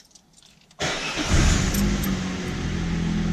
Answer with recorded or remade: recorded